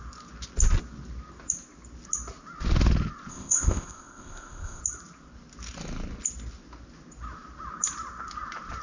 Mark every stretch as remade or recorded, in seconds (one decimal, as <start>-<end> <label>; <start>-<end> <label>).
0.0-3.3 recorded; 3.3-4.8 remade; 4.8-8.8 recorded

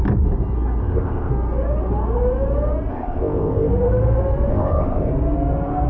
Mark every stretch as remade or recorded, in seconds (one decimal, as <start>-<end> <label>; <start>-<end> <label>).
0.0-0.8 recorded; 0.8-1.3 remade; 1.3-2.9 recorded; 2.9-3.7 remade; 3.7-4.5 recorded; 4.5-5.1 remade; 5.1-5.9 recorded

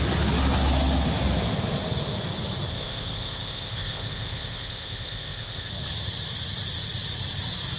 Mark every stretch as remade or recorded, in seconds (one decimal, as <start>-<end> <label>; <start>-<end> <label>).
0.0-2.7 recorded; 2.7-5.7 remade; 5.7-7.8 recorded

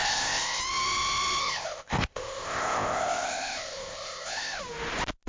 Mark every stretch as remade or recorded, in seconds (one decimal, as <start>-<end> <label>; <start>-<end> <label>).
0.0-0.6 remade; 0.6-1.4 recorded; 1.4-4.6 remade; 4.6-5.3 recorded

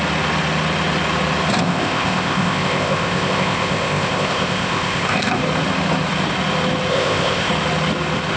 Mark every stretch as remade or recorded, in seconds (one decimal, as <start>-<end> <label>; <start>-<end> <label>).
0.0-1.6 recorded; 1.6-5.4 remade; 5.4-6.9 recorded; 6.9-7.5 remade; 7.5-8.4 recorded

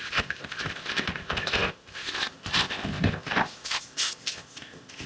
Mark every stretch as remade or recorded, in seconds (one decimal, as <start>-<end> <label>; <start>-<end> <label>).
0.0-5.1 remade

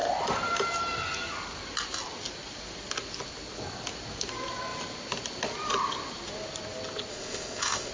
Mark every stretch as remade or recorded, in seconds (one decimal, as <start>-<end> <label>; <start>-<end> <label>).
0.0-7.1 recorded; 7.1-7.9 remade